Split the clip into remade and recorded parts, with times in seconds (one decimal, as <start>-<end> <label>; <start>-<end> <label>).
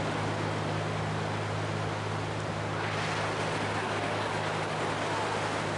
0.0-3.8 recorded; 3.8-4.8 remade; 4.8-5.8 recorded